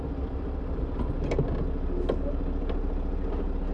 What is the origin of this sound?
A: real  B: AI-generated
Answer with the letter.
A